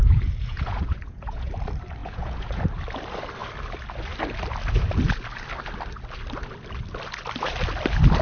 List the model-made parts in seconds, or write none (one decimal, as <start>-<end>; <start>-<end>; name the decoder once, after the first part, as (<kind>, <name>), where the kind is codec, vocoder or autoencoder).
0.0-1.5 (vocoder, Vocos); 2.0-2.6